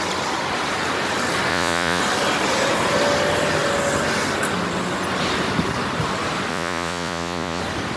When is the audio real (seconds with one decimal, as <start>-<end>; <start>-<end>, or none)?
0.0-1.5; 2.0-6.5; 7.6-8.0